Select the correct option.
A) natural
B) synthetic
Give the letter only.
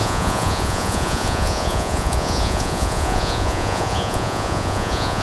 B